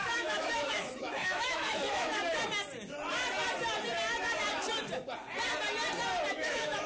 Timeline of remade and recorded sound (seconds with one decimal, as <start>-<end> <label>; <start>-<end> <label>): 0.0-2.2 remade; 2.2-6.3 recorded; 6.3-6.9 remade